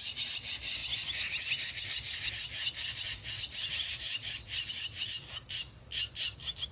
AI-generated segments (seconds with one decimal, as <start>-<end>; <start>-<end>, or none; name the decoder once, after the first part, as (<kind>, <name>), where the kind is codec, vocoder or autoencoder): 0.0-6.7 (vocoder, BigVGAN v2)